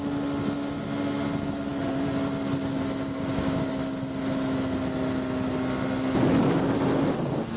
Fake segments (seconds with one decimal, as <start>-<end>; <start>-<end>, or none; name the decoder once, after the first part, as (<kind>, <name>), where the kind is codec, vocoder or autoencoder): 3.2-3.7 (codec, DAC)